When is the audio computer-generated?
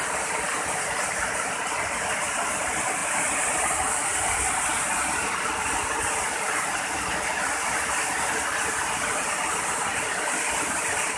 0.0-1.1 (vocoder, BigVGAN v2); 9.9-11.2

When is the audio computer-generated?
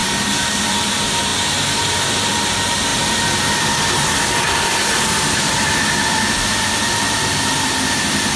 0.0-0.9 (vocoder, BigVGAN v2); 2.9-7.7